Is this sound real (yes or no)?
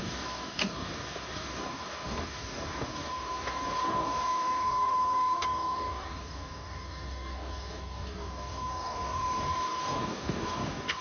no